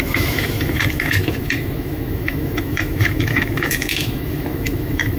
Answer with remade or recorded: remade